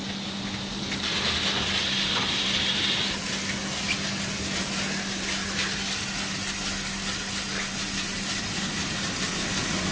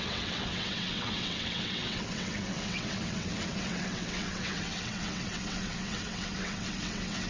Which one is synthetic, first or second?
second